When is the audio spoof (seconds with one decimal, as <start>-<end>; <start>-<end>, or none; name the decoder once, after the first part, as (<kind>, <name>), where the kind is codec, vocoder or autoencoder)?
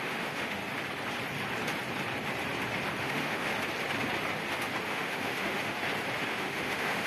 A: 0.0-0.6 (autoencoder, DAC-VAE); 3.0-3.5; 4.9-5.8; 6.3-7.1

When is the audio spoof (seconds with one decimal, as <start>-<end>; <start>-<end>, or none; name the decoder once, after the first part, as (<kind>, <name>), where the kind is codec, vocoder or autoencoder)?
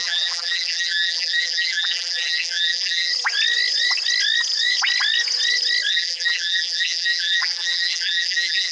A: 0.0-3.1 (vocoder, BigVGAN v2); 5.9-8.7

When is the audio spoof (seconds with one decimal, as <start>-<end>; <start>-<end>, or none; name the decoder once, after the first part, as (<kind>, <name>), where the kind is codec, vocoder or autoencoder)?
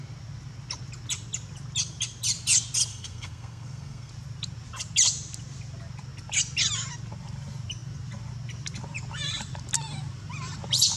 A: 2.9-4.1 (codec, SNAC)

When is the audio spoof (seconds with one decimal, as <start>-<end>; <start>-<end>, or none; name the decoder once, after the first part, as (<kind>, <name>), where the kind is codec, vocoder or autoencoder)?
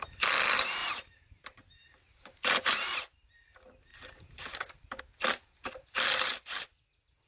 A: 0.8-3.0 (vocoder, BigVGAN v2); 3.9-5.0